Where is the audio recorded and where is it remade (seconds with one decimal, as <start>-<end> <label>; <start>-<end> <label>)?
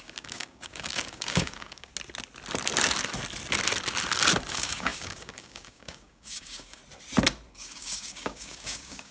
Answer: 0.0-1.9 remade; 1.9-4.5 recorded; 4.5-6.8 remade; 6.8-7.5 recorded; 7.5-9.1 remade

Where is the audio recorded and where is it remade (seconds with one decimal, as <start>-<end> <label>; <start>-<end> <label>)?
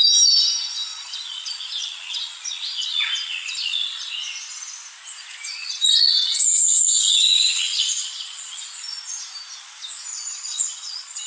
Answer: 0.0-0.9 recorded; 0.9-4.1 remade; 4.1-5.6 recorded; 5.6-8.6 remade; 8.6-10.1 recorded; 10.1-11.3 remade